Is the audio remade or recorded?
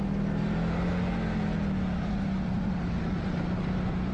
recorded